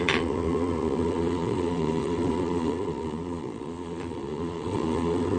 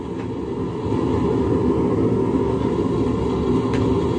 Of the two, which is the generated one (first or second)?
first